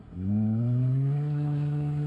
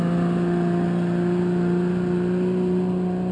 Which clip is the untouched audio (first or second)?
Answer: second